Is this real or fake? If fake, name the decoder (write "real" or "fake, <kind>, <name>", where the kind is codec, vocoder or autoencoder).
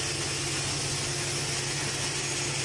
real